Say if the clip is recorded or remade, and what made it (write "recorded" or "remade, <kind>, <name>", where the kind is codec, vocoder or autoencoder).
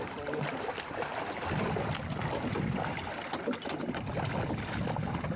recorded